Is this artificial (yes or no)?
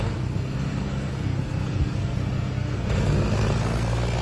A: yes